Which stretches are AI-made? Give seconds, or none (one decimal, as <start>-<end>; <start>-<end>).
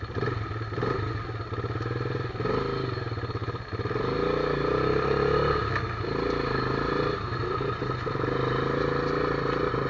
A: none